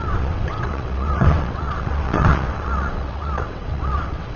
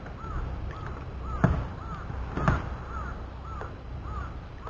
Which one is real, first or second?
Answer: second